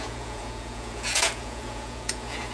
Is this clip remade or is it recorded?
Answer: remade